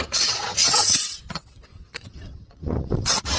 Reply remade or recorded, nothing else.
remade